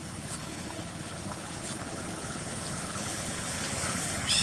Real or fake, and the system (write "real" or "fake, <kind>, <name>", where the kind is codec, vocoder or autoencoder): fake, codec, HILCodec